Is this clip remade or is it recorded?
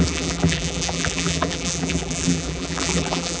remade